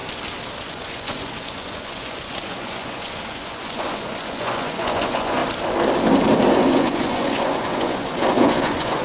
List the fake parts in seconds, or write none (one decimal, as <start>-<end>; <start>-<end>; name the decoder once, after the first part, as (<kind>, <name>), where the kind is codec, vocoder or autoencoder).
0.6-5.4 (vocoder, Vocos); 6.6-9.0